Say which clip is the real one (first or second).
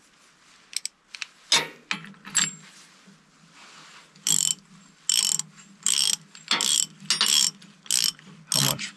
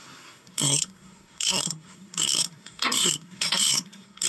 first